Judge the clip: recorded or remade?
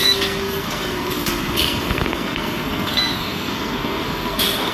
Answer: remade